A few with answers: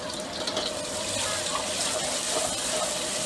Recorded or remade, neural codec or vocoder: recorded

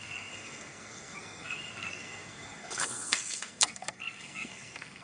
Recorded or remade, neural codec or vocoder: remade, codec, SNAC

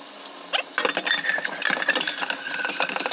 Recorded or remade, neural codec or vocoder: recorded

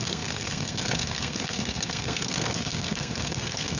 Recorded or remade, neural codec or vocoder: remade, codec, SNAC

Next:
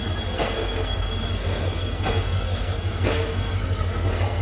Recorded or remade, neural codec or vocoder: remade, codec, SNAC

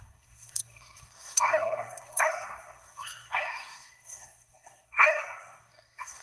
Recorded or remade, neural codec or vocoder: remade, codec, SNAC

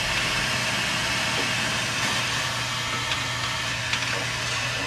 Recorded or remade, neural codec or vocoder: recorded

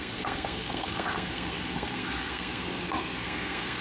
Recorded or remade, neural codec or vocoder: remade, codec, SNAC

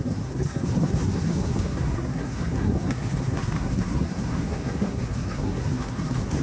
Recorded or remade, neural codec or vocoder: remade, codec, SNAC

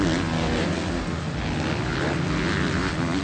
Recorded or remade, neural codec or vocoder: recorded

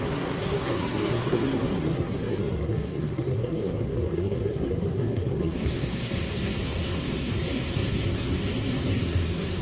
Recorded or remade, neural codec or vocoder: remade, codec, SNAC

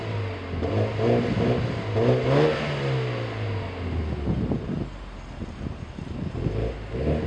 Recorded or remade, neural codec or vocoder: recorded